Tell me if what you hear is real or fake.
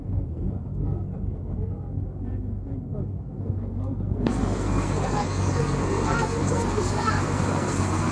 fake